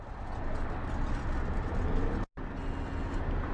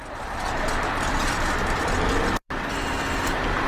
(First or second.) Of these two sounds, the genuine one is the first